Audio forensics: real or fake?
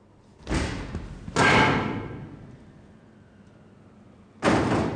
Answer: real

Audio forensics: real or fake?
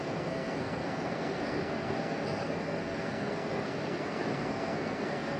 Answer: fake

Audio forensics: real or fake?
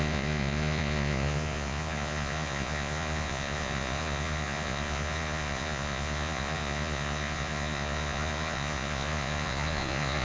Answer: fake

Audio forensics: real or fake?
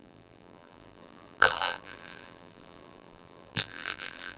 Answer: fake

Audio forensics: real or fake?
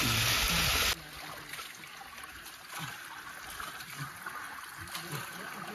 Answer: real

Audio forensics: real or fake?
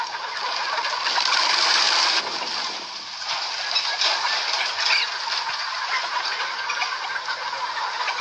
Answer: real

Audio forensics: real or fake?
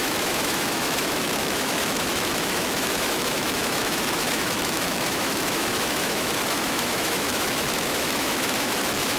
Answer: fake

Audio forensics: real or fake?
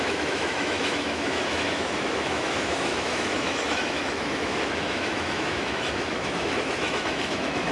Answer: fake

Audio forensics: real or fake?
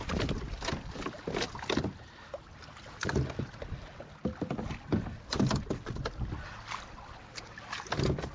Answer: real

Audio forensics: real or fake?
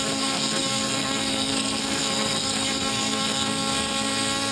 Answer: fake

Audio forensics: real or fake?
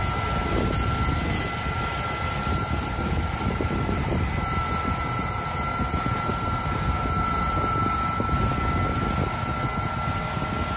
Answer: real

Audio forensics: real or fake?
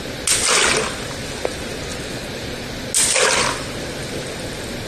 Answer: real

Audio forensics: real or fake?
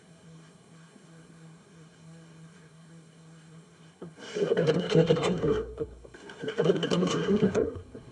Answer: fake